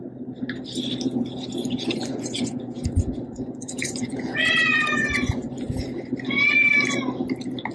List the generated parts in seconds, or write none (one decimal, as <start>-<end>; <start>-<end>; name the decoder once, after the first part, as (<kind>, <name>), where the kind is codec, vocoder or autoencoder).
1.6-5.6 (vocoder, Vocos)

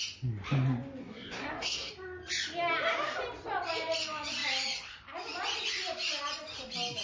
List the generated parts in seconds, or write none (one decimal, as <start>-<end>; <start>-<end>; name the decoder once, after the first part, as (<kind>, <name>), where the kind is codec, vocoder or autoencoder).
1.0-1.9 (codec, SNAC)

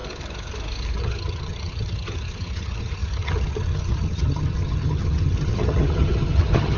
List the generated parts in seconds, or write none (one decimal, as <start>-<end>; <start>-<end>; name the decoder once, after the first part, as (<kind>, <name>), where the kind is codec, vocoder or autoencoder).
1.0-6.8 (vocoder, HiFi-GAN)